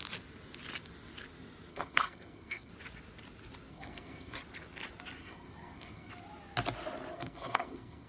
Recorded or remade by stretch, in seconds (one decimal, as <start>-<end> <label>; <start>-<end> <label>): 0.0-1.7 recorded; 1.7-2.7 remade; 2.7-3.7 recorded; 3.7-4.4 remade; 4.4-5.2 recorded; 5.2-6.1 remade; 6.1-7.1 recorded; 7.1-8.1 remade